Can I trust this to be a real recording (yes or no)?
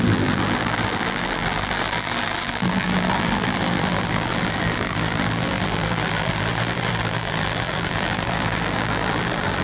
no